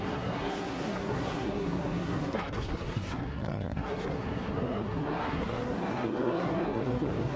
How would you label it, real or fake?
fake